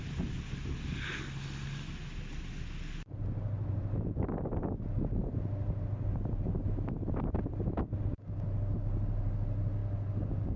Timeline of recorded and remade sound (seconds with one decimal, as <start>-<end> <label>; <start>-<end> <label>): 0.0-10.6 recorded